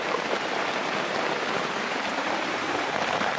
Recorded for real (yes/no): no